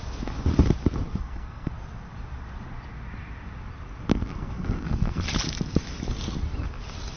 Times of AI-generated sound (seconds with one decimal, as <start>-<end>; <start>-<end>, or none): 1.1-1.7; 4.1-5.2

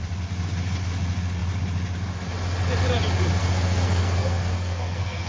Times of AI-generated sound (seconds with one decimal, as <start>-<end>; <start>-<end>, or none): 3.4-5.3

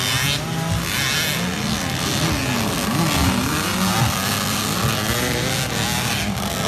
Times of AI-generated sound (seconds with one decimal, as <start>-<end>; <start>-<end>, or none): none

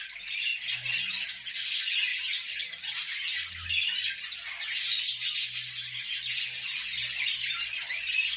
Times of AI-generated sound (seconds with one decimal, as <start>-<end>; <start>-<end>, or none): none

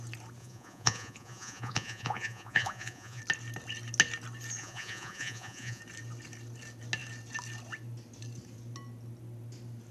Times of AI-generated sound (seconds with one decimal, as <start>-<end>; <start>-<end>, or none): 0.4-3.2; 4.6-5.8